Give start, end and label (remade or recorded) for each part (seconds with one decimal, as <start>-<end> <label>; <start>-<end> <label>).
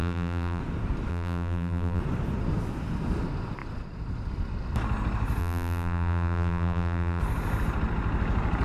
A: 0.0-0.6 remade; 0.6-1.1 recorded; 1.1-2.0 remade; 2.0-5.4 recorded; 5.4-7.2 remade; 7.2-8.6 recorded